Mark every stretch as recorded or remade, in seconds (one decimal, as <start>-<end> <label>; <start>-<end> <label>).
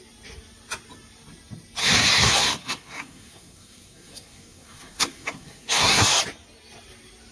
0.0-1.8 recorded; 1.8-6.2 remade; 6.2-7.3 recorded